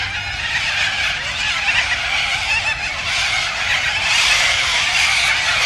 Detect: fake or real real